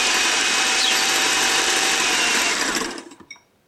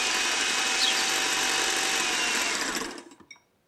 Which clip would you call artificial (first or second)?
first